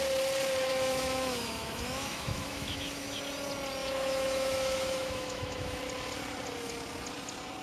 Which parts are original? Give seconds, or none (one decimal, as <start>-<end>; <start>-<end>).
0.0-0.7; 3.2-3.8; 5.8-7.6